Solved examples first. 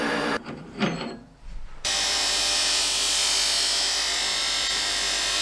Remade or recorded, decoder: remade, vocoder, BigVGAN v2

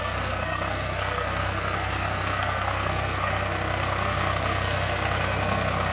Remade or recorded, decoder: remade, codec, SNAC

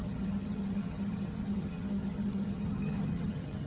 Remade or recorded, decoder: remade, vocoder, HiFi-GAN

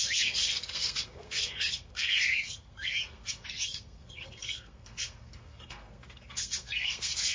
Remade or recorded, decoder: remade, codec, SNAC